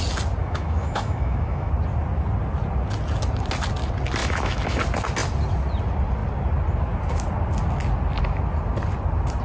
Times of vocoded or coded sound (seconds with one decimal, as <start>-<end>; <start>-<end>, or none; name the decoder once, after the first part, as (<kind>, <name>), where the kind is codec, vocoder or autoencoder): 0.4-1.7 (autoencoder, DAC-VAE); 4.2-4.8